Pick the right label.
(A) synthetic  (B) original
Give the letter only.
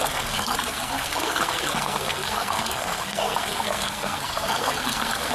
A